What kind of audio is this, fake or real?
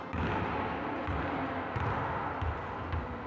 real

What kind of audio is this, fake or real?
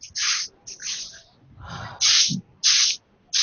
real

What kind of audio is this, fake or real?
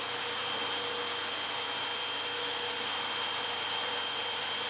real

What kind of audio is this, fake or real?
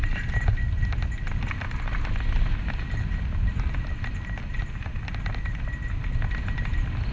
real